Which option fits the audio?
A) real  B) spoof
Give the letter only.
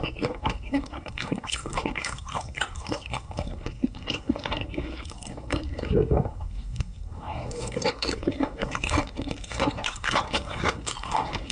B